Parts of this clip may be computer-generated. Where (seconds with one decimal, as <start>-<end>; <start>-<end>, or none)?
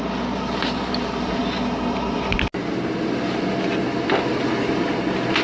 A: none